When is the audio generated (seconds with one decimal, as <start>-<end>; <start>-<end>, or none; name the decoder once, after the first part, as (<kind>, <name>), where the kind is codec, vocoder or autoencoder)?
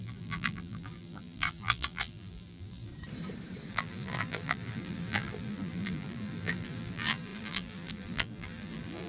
0.0-2.9 (vocoder, BigVGAN v2); 3.7-9.1